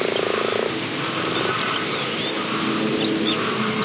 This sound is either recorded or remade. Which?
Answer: recorded